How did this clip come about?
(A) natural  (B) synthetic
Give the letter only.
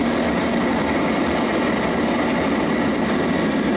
A